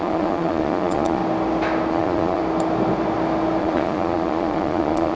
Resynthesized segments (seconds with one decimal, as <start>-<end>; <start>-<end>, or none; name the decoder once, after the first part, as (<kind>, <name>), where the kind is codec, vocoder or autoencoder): 0.0-1.2 (vocoder, Vocos); 1.9-2.4; 3.6-5.1